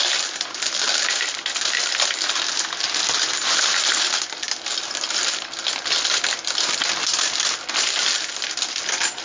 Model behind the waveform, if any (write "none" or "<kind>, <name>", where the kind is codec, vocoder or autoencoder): none